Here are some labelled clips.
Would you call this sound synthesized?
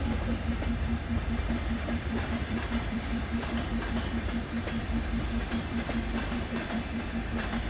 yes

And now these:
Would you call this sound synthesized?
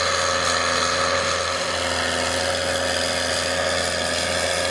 no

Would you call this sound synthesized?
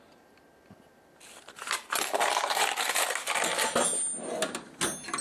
no